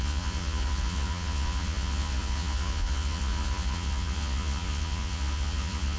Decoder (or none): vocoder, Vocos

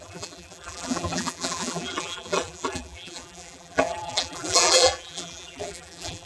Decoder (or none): vocoder, BigVGAN v2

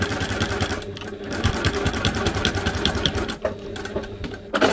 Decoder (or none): none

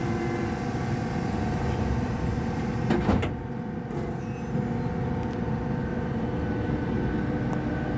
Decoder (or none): none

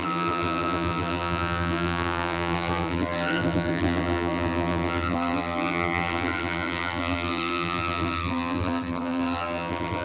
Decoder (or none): vocoder, BigVGAN v2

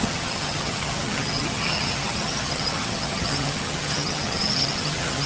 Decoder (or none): vocoder, HiFi-GAN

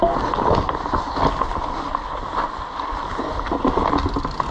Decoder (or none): none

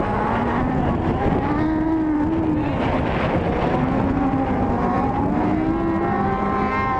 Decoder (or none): none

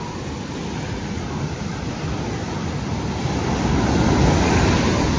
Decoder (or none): none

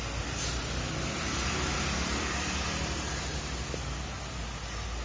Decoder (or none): none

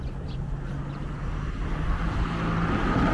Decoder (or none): none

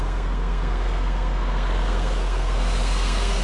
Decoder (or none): codec, SNAC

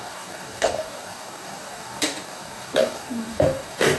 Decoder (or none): codec, DAC